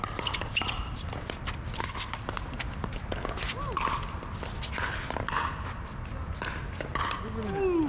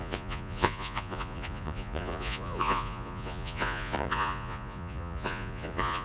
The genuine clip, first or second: first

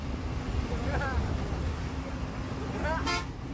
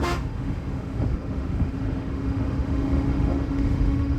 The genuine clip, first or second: first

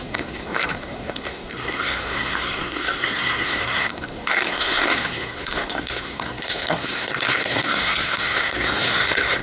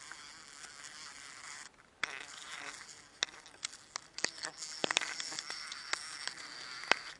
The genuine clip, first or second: second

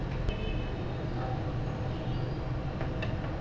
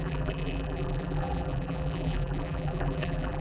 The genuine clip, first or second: first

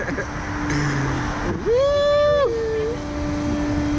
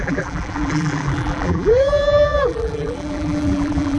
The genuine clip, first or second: first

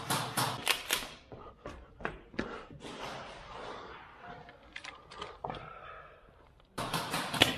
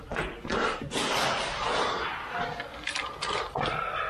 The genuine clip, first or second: second